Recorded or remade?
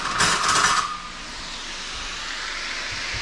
recorded